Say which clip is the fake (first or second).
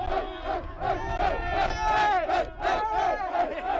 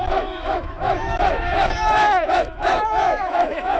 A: second